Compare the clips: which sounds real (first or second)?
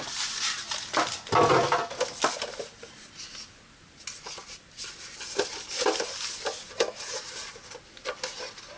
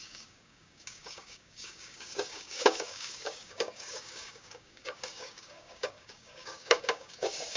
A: first